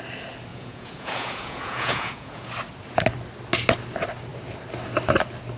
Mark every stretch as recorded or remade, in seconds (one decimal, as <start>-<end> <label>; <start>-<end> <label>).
0.0-0.5 recorded; 0.5-2.5 remade; 2.5-5.6 recorded